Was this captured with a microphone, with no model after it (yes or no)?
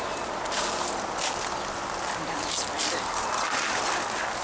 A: yes